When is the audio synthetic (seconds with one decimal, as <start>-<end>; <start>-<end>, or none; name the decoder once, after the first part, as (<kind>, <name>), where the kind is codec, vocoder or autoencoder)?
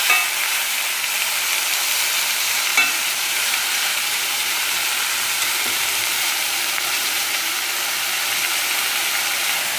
2.7-7.5 (vocoder, BigVGAN v2)